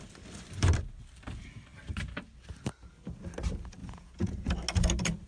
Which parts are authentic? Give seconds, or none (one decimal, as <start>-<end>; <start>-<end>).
0.0-3.8; 4.5-5.3